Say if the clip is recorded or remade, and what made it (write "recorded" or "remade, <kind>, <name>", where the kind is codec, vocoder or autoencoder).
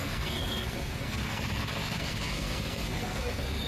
remade, codec, SNAC